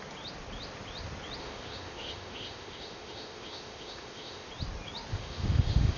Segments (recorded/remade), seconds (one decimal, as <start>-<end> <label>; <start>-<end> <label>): 0.0-1.4 recorded; 1.4-4.5 remade; 4.5-5.1 recorded; 5.1-6.0 remade